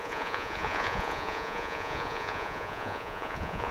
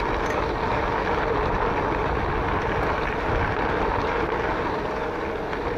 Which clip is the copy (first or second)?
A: first